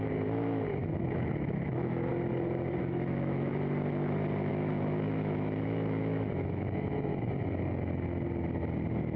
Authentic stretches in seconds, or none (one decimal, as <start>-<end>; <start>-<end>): 0.0-0.8; 2.1-2.8; 3.5-4.5; 7.3-9.2